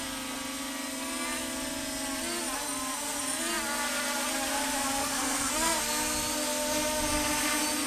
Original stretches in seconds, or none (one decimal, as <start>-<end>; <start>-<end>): 0.0-5.0; 5.8-7.9